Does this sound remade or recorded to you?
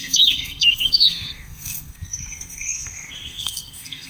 remade